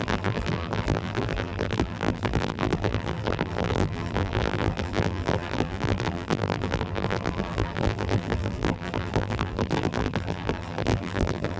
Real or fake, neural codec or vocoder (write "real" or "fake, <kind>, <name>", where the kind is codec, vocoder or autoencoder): fake, vocoder, BigVGAN v2